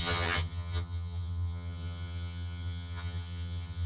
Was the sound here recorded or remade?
remade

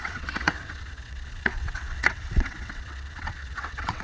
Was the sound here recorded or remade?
remade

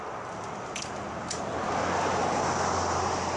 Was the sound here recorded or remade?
recorded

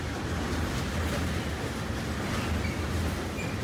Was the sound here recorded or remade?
recorded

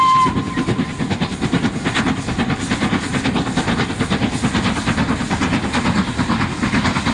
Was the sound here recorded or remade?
recorded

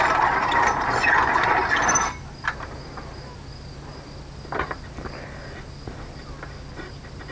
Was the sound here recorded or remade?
recorded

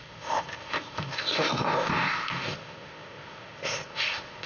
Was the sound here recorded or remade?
remade